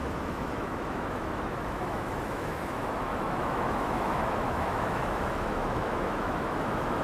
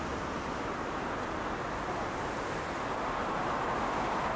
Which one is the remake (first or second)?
first